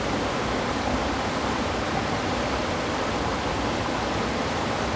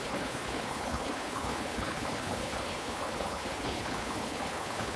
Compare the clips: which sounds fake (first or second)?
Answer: second